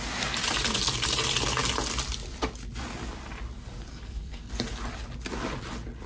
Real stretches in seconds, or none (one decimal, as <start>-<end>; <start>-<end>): 0.0-3.9; 4.5-6.1